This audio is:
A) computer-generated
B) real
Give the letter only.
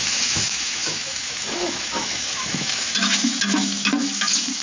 A